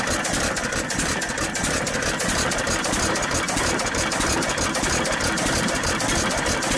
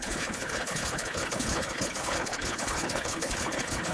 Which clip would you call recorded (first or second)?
first